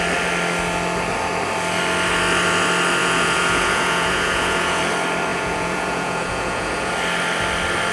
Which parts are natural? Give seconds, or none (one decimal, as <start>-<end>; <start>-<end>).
0.0-3.0; 4.8-5.3; 6.9-7.9